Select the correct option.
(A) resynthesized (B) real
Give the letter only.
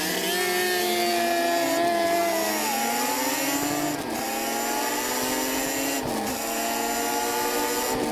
B